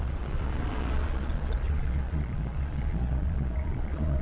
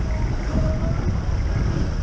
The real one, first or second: second